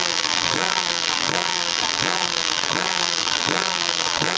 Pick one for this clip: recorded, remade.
remade